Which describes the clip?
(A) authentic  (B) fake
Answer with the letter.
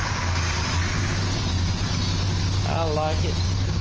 A